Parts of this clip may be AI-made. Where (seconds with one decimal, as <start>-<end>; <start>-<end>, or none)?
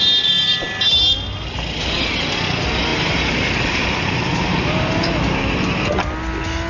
2.9-5.9